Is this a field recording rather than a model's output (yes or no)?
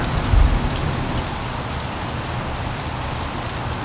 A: yes